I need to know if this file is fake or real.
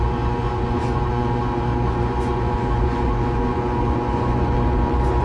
fake